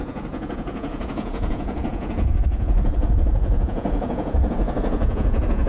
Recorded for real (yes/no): no